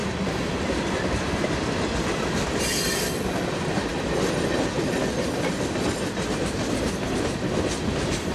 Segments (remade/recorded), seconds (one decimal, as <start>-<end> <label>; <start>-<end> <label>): 0.0-2.6 remade; 2.6-8.3 recorded